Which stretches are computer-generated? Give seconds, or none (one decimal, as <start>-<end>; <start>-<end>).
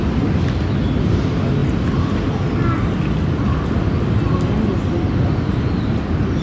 none